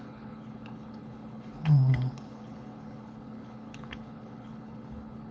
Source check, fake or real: fake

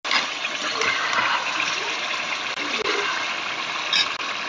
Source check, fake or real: real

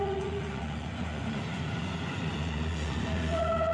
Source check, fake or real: fake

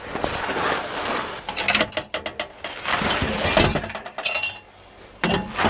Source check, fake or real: real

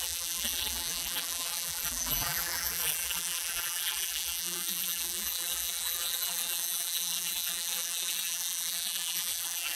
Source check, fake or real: fake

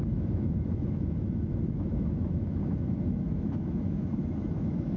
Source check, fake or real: fake